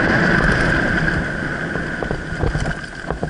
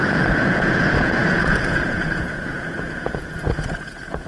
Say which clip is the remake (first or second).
second